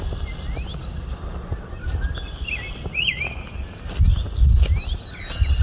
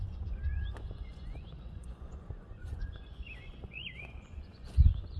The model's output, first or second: second